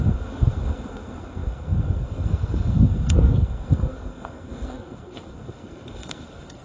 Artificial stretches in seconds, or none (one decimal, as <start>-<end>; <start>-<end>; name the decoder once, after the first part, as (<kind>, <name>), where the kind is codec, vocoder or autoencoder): 0.0-6.6 (codec, SNAC)

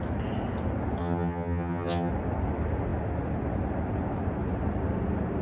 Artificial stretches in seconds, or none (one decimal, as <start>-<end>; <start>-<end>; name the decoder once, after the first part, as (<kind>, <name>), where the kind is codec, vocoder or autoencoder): 1.0-2.1 (vocoder, HiFi-GAN)